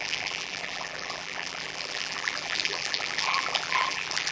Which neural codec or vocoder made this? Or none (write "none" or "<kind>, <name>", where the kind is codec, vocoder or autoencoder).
vocoder, BigVGAN v2